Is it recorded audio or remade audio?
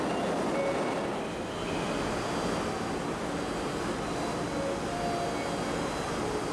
recorded